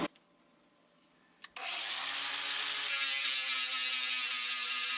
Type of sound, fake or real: real